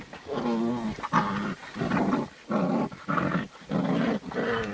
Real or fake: real